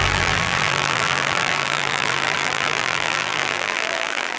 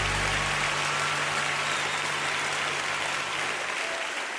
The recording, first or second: second